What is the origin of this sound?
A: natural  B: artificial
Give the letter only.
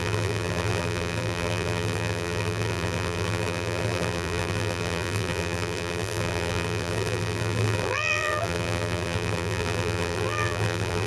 B